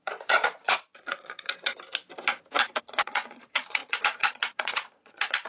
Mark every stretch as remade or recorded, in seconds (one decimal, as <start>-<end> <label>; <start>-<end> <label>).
0.0-1.7 remade; 1.7-2.8 recorded; 2.8-5.5 remade